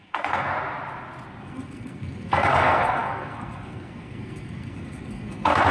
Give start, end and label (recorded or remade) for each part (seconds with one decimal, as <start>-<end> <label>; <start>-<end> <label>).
0.0-0.5 remade; 0.5-1.4 recorded; 1.4-5.7 remade